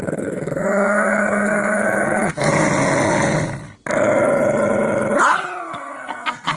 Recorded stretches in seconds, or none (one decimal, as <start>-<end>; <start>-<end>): 2.5-5.6